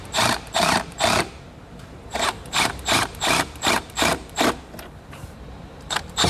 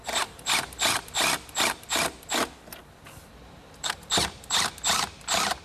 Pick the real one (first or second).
second